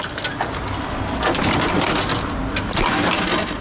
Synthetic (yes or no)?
no